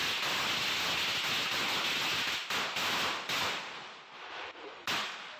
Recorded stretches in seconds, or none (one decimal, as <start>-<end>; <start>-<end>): 0.0-5.4